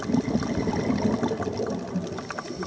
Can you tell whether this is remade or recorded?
recorded